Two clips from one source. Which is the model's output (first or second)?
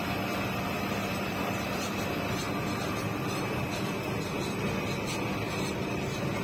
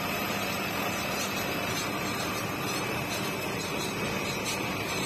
second